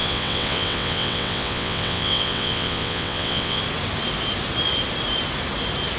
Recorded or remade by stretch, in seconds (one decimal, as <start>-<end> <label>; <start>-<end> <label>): 0.0-3.6 remade; 3.6-6.0 recorded